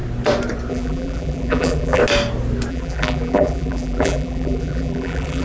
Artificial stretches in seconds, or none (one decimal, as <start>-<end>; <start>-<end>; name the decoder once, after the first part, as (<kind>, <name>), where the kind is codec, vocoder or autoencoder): 0.7-2.0 (vocoder, BigVGAN v2); 2.7-5.4